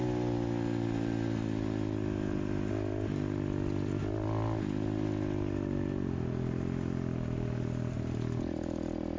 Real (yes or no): yes